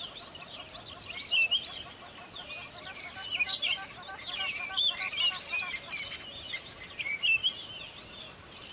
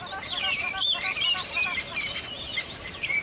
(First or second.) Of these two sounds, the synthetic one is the second